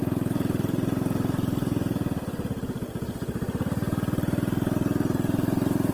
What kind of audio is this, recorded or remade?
recorded